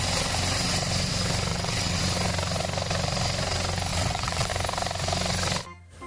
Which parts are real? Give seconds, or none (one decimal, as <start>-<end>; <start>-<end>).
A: 0.0-1.5; 2.0-3.9; 4.5-6.1